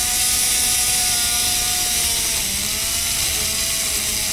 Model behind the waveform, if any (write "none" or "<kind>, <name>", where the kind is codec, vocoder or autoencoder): none